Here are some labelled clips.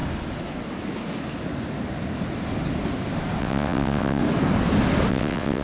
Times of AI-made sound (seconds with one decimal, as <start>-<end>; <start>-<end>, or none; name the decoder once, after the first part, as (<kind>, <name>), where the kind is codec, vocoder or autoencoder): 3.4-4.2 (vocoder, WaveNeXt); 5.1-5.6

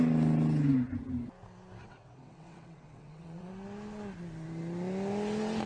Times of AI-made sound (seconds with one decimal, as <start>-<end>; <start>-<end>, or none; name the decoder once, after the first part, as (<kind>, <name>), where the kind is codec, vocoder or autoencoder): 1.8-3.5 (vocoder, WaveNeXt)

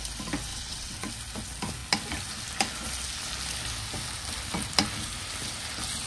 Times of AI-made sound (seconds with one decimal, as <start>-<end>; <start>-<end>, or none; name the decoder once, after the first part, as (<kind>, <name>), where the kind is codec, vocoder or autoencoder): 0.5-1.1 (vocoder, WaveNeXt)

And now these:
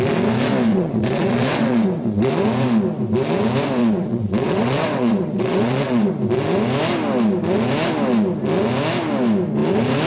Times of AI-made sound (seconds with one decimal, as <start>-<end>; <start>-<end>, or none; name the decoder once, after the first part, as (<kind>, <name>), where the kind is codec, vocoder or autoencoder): 0.7-2.3 (vocoder, WaveNeXt); 3.8-6.1

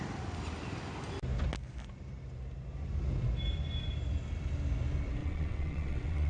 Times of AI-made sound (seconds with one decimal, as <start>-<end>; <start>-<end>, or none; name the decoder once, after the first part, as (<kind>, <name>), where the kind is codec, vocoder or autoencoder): 5.2-6.3 (vocoder, WaveNeXt)